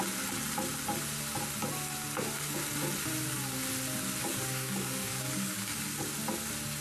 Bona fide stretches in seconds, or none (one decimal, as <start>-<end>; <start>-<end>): 0.0-4.2; 5.8-6.8